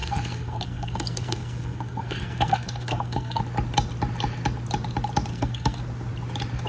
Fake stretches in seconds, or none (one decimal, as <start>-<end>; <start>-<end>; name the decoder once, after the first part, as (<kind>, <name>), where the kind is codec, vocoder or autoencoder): 0.0-3.4 (codec, SNAC); 5.3-5.8